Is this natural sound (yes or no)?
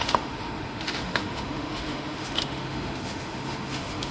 no